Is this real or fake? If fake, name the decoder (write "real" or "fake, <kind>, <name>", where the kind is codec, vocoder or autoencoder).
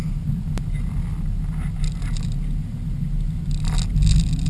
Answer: real